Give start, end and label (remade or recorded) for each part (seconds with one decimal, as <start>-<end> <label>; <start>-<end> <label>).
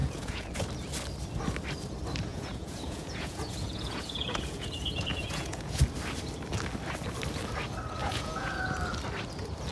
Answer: 0.0-0.5 remade; 0.5-2.3 recorded; 2.3-5.8 remade; 5.8-8.0 recorded; 8.0-8.8 remade; 8.8-9.7 recorded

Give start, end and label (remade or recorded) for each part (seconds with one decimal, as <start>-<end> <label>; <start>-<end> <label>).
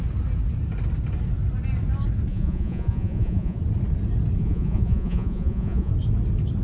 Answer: 0.0-2.3 recorded; 2.3-3.6 remade; 3.6-4.4 recorded; 4.4-5.9 remade; 5.9-6.6 recorded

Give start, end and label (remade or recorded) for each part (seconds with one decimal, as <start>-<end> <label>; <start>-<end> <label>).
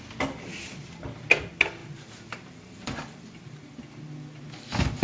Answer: 0.0-1.8 recorded; 1.8-3.8 remade; 3.8-5.0 recorded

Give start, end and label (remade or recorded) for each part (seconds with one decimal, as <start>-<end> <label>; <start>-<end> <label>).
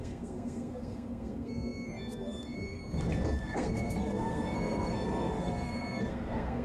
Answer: 0.0-2.8 remade; 2.8-3.4 recorded; 3.4-6.6 remade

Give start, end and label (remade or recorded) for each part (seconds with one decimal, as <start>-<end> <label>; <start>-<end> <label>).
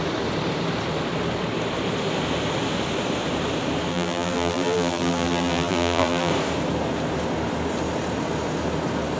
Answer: 0.0-3.9 recorded; 3.9-6.3 remade; 6.3-9.2 recorded